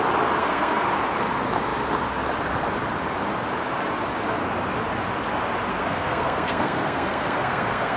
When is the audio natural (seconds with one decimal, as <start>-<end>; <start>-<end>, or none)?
0.0-0.4; 0.9-5.7